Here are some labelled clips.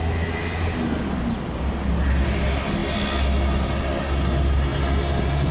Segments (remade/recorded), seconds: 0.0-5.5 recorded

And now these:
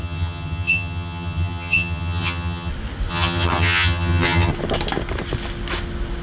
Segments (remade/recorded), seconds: 0.0-2.7 remade; 2.7-3.1 recorded; 3.1-4.5 remade; 4.5-6.2 recorded

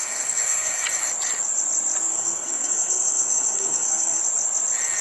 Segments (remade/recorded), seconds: 0.0-0.8 remade; 0.8-2.1 recorded; 2.1-4.2 remade; 4.2-5.0 recorded

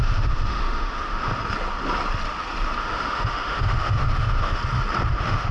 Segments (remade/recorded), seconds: 0.0-1.3 remade; 1.3-2.8 recorded; 2.8-4.6 remade; 4.6-5.1 recorded; 5.1-5.5 remade

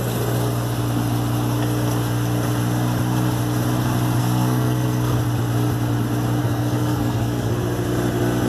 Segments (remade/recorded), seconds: 0.0-4.2 recorded; 4.2-5.2 remade; 5.2-6.4 recorded; 6.4-7.5 remade; 7.5-8.5 recorded

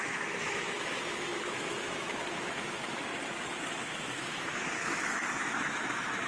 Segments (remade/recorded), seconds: 0.0-3.1 remade; 3.1-3.7 recorded; 3.7-6.3 remade